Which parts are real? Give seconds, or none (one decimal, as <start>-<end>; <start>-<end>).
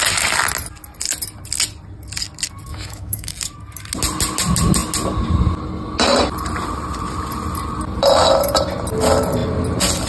0.0-2.7; 3.3-10.1